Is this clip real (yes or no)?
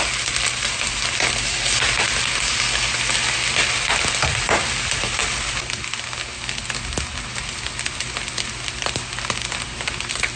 yes